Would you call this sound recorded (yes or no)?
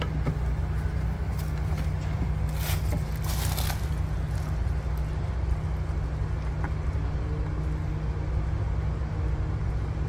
yes